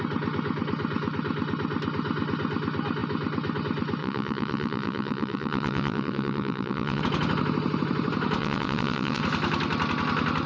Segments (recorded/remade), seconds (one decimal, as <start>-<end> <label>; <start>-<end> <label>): 0.0-4.0 recorded; 4.0-7.0 remade; 7.0-8.4 recorded; 8.4-9.2 remade; 9.2-10.5 recorded